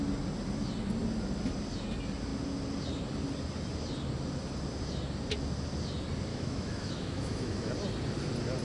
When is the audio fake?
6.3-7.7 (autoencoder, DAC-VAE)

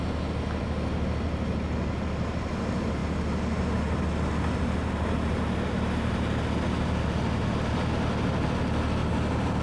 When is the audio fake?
none